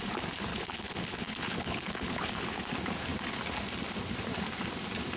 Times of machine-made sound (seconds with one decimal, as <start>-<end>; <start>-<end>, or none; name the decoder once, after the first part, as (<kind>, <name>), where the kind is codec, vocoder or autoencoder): 0.5-2.7 (codec, HILCodec)